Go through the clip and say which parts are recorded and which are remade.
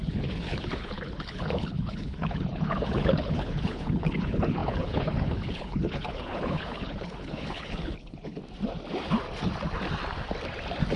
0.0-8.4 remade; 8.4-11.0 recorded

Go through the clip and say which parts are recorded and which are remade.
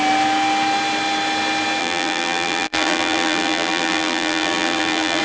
0.0-1.8 recorded; 1.8-5.2 remade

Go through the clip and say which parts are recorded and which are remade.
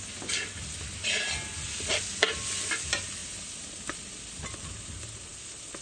0.0-5.8 recorded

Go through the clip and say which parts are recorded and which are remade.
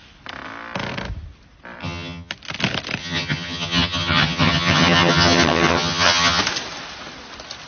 0.0-1.8 recorded; 1.8-2.3 remade; 2.3-3.0 recorded; 3.0-6.4 remade; 6.4-7.7 recorded